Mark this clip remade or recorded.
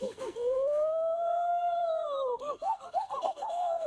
remade